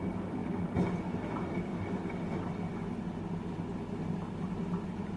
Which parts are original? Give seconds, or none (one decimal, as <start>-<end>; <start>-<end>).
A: 0.4-1.0; 1.7-4.8